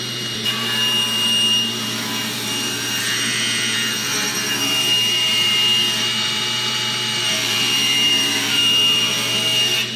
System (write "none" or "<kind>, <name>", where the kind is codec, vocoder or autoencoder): vocoder, BigVGAN v2